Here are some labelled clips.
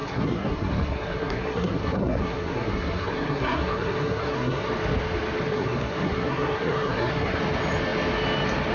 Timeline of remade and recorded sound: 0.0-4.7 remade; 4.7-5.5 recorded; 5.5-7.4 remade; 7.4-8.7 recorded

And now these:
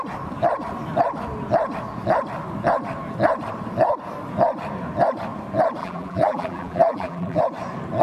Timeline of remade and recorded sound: 0.0-5.8 recorded; 5.8-7.4 remade; 7.4-8.0 recorded